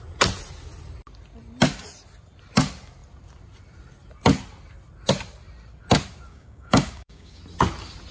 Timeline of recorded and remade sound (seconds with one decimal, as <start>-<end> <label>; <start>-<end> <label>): 0.0-6.3 recorded; 6.3-7.4 remade; 7.4-8.1 recorded